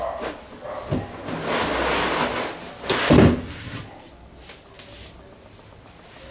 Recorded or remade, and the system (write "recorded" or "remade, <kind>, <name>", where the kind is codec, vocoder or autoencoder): recorded